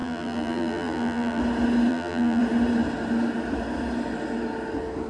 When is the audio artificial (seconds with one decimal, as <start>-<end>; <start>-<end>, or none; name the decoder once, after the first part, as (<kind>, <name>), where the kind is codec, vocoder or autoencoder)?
0.0-1.4 (vocoder, BigVGAN v2); 1.9-2.4